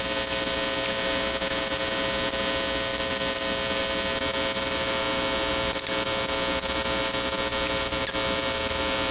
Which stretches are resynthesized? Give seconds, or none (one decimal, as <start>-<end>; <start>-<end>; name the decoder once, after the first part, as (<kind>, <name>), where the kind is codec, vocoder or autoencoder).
none